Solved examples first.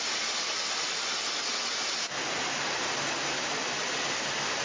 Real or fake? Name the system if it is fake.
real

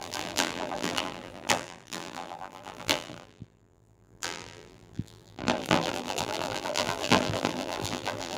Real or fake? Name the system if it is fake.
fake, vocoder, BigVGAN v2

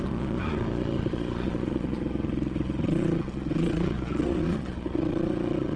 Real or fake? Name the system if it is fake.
fake, vocoder, Vocos